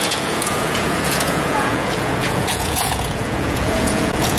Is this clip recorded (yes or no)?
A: no